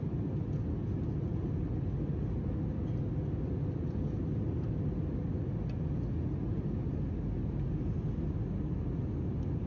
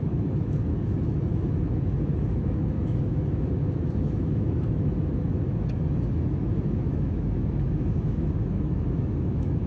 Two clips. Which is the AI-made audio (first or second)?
second